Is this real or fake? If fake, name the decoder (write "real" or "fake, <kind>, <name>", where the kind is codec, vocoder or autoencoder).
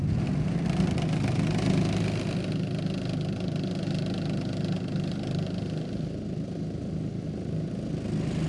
real